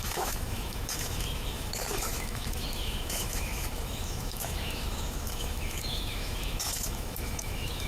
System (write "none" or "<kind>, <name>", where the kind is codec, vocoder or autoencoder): autoencoder, DAC-VAE